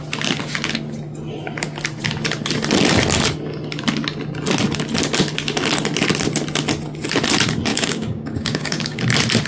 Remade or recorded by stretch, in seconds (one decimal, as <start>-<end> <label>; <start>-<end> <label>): 0.0-7.7 recorded; 7.7-9.0 remade; 9.0-9.5 recorded